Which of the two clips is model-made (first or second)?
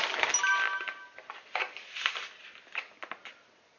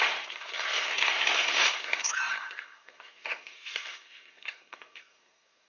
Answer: second